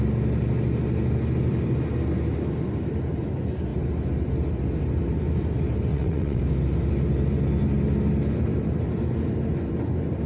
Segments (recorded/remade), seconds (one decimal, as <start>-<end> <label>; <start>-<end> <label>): 0.0-5.9 recorded; 5.9-6.4 remade; 6.4-10.3 recorded